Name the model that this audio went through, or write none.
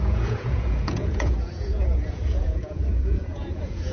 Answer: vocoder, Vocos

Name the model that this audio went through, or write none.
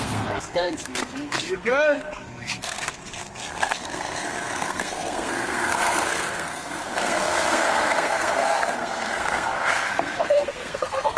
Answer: codec, SNAC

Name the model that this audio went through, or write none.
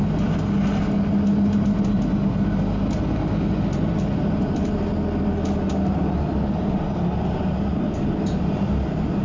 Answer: none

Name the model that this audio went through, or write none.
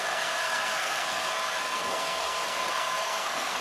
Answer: codec, SNAC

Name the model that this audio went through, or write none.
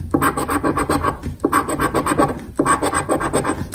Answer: none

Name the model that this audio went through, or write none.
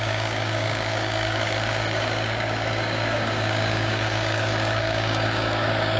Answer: codec, DAC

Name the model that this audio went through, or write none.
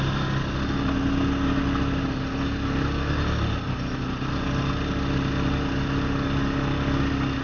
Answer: none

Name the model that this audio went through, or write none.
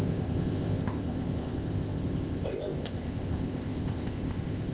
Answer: codec, ZipCodec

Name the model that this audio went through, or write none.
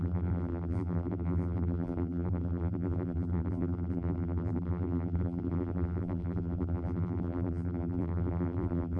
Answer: vocoder, BigVGAN v2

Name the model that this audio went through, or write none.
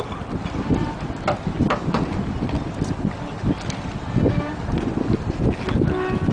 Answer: none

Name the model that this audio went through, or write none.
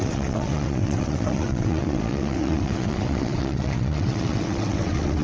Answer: vocoder, WaveNeXt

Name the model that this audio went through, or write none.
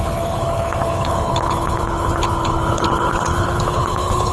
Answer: codec, HILCodec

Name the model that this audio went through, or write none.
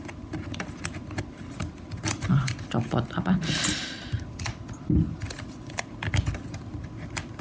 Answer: none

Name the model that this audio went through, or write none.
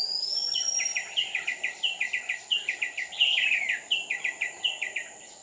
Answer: none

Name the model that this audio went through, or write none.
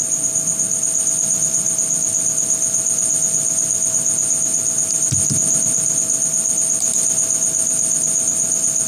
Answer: none